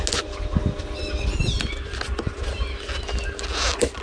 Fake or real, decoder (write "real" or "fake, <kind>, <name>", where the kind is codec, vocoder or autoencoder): real